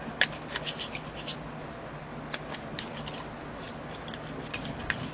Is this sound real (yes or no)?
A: yes